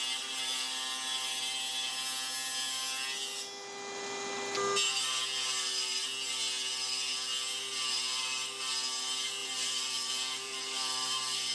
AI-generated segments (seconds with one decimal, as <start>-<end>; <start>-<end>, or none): 9.4-11.5

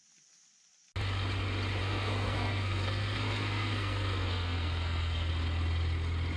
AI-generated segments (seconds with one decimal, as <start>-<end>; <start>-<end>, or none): 1.8-5.3

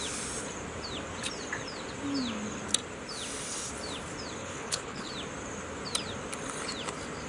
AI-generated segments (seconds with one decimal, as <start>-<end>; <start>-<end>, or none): 4.4-5.1

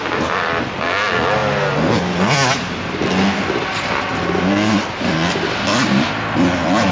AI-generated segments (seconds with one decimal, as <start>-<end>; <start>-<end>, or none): none

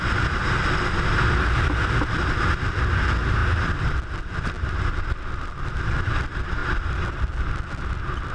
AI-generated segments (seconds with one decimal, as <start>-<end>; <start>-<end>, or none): 6.6-7.2